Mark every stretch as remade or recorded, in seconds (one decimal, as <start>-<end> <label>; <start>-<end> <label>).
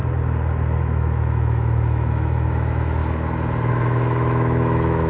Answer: 0.0-0.8 recorded; 0.8-3.0 remade; 3.0-3.7 recorded; 3.7-5.1 remade